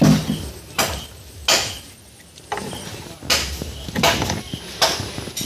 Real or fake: real